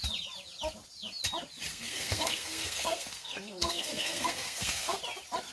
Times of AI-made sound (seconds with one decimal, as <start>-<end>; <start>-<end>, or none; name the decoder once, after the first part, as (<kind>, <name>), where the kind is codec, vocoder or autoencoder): 1.7-5.0 (codec, SNAC)